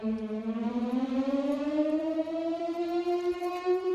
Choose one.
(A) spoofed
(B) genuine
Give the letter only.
A